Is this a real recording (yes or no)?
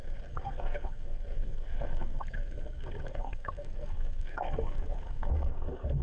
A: no